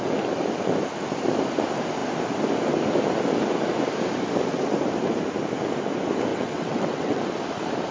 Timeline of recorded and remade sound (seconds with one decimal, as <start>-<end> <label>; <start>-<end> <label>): 0.0-6.3 recorded; 6.3-7.2 remade; 7.2-7.9 recorded